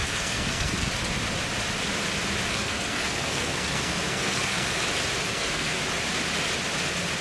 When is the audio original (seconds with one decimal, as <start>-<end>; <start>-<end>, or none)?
0.9-2.5; 4.8-5.3; 5.8-7.2